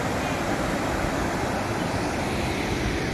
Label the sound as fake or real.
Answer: real